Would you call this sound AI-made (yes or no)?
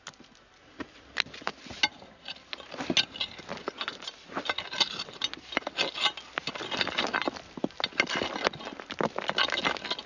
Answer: no